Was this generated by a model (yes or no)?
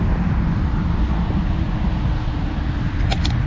no